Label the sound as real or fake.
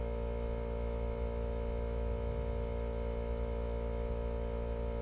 real